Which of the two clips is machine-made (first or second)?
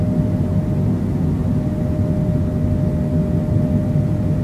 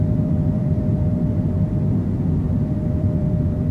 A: second